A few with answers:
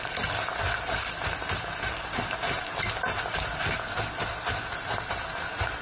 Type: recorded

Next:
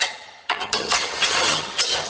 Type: remade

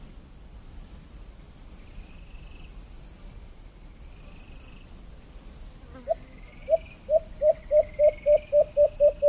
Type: recorded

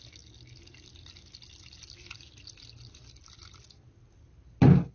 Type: recorded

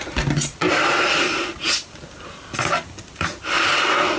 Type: recorded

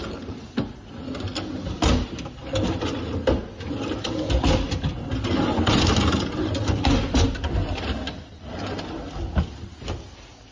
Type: recorded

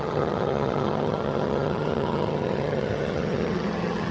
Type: remade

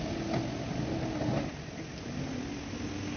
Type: recorded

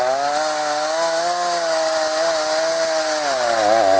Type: recorded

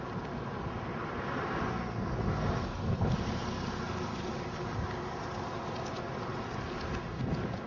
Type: recorded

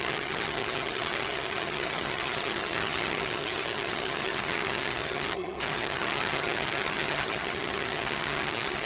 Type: remade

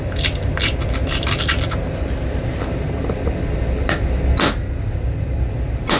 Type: recorded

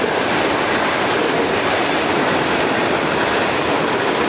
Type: recorded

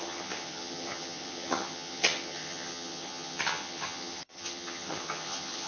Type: remade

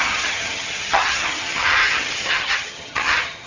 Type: remade